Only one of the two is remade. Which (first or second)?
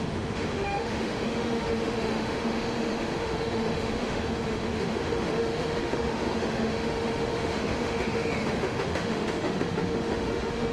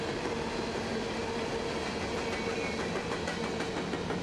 first